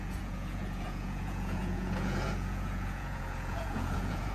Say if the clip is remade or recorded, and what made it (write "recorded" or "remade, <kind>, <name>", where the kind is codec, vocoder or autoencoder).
remade, vocoder, Vocos